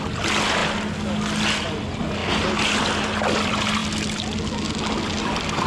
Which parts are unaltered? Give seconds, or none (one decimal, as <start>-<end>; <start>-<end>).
0.0-5.7